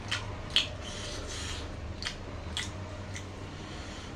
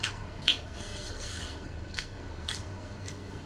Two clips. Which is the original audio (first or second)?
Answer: first